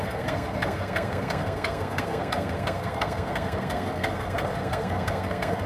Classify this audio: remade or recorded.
remade